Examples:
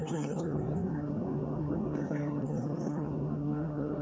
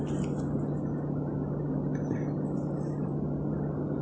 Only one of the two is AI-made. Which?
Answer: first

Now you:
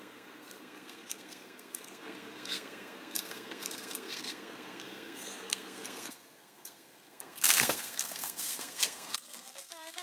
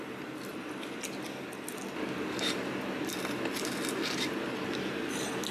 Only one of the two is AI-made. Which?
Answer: first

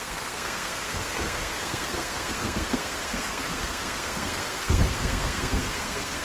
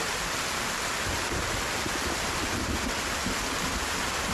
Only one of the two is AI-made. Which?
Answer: first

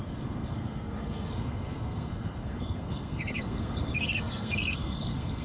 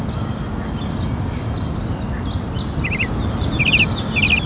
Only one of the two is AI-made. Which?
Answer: first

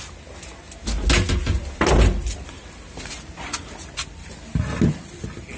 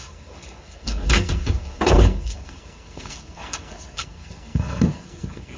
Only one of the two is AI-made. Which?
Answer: second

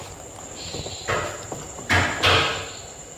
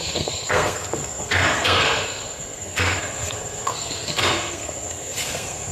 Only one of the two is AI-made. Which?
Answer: second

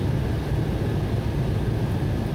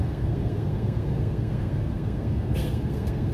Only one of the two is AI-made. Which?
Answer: second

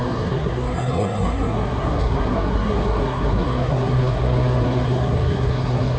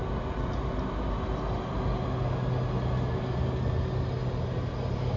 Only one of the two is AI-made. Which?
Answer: first